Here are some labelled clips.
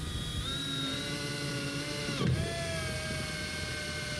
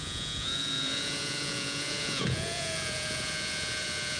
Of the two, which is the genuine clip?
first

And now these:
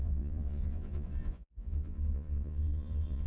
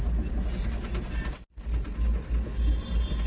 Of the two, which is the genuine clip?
second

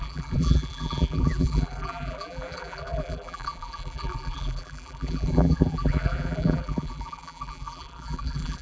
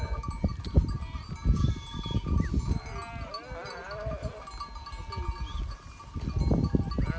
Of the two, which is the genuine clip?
second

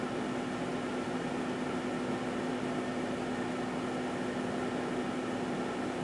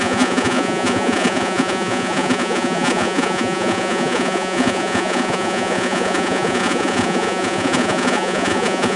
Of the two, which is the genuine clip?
first